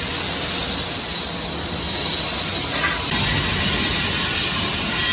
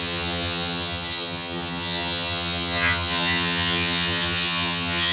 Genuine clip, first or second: first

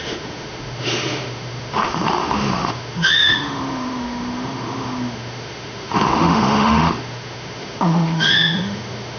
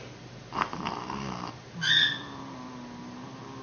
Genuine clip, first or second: second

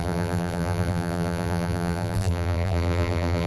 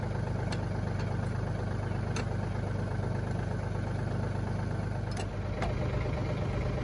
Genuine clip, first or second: second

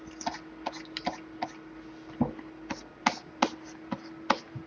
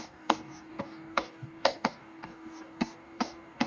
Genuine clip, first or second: first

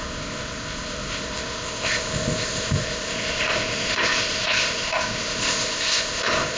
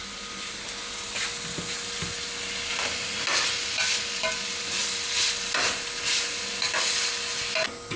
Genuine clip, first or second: second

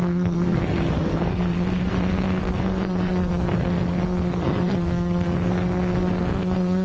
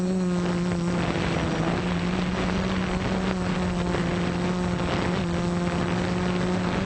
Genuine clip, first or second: second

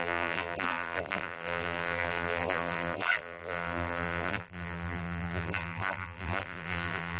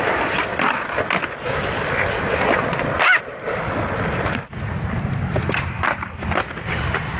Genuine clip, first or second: second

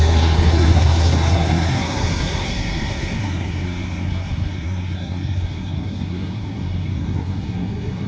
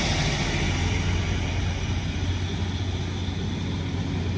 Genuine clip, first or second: second